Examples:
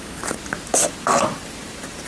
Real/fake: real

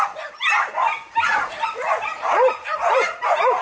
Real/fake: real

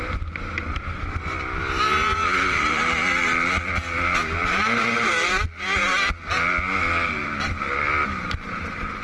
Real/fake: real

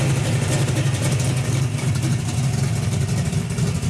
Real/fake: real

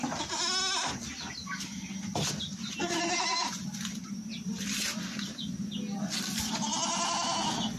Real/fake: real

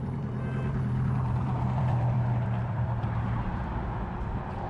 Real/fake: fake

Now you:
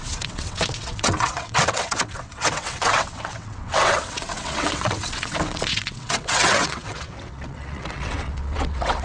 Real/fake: fake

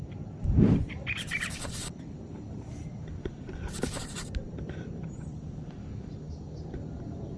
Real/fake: fake